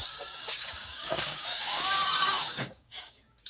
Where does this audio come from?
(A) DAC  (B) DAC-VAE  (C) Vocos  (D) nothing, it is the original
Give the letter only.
A